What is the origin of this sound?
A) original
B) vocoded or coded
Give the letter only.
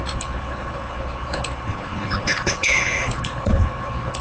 B